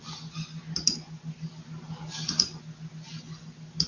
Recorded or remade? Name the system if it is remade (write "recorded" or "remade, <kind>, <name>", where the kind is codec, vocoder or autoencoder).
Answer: recorded